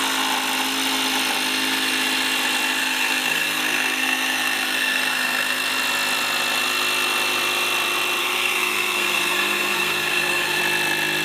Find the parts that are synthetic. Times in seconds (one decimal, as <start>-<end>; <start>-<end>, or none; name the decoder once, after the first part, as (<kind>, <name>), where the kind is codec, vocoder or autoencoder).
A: 2.8-5.7 (codec, SNAC); 8.2-10.6